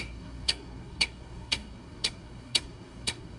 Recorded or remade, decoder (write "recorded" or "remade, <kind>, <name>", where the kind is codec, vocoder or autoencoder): remade, codec, SNAC